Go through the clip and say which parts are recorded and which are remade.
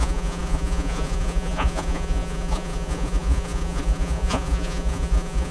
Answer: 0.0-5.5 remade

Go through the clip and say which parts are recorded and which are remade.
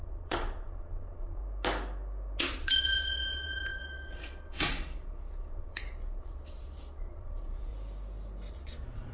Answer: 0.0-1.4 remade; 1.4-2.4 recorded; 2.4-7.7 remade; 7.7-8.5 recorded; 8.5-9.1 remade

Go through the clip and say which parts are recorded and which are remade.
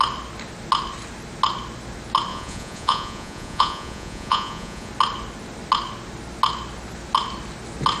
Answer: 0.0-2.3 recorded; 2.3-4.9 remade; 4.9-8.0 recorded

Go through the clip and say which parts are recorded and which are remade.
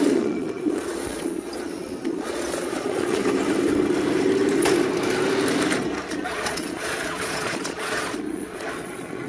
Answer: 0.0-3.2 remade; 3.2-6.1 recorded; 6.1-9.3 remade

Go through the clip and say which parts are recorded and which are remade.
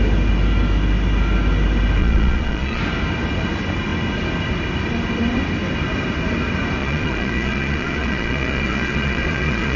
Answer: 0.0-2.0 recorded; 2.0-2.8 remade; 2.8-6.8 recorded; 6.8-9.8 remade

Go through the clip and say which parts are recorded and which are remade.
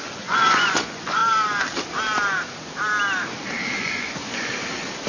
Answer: 0.0-1.2 remade; 1.2-3.8 recorded; 3.8-4.5 remade; 4.5-5.1 recorded